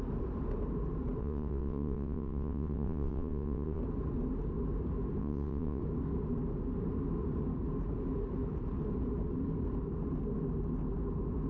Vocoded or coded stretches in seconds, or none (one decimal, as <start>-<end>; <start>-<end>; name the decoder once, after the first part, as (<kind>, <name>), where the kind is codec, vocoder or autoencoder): 1.2-3.8 (vocoder, WaveNeXt); 5.2-5.8